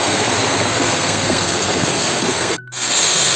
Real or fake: fake